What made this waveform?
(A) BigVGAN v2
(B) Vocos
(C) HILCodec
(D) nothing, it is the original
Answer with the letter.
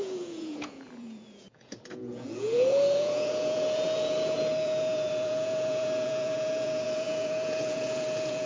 B